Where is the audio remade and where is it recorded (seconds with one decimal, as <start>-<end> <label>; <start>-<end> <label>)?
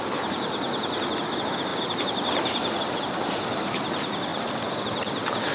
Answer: 0.0-1.7 recorded; 1.7-3.4 remade; 3.4-5.5 recorded